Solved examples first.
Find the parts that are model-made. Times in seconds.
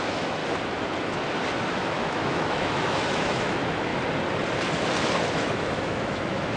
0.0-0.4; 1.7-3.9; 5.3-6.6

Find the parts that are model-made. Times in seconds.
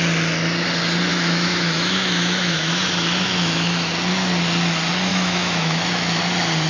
1.1-3.9; 5.1-6.2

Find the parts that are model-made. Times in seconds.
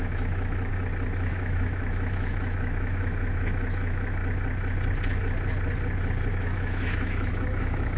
0.0-0.7; 1.3-4.2; 6.3-8.0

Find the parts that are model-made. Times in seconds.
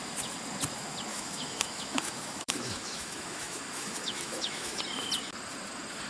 1.1-4.8